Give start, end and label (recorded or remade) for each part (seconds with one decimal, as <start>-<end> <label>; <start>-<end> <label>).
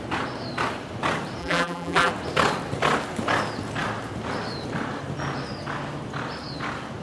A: 0.0-1.4 recorded; 1.4-2.1 remade; 2.1-7.0 recorded